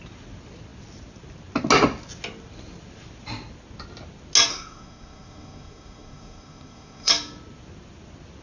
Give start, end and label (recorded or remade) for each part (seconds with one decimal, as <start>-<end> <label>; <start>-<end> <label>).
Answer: 0.0-4.5 recorded; 4.5-7.1 remade; 7.1-8.4 recorded